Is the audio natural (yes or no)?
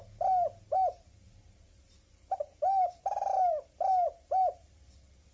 yes